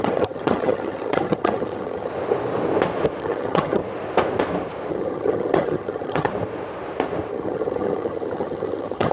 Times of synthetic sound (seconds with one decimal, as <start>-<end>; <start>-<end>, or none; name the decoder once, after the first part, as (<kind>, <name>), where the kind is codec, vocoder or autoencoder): 0.0-2.1 (vocoder, HiFi-GAN); 3.2-3.8; 4.9-6.3; 7.3-9.1